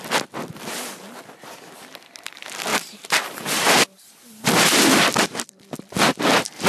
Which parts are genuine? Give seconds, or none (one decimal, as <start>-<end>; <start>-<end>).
0.0-2.7